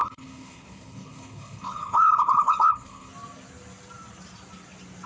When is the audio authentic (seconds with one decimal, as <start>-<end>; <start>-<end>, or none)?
3.1-5.1